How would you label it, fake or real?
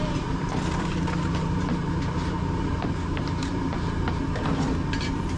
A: fake